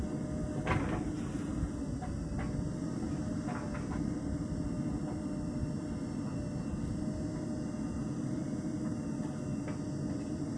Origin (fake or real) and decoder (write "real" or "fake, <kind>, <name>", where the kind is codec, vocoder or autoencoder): real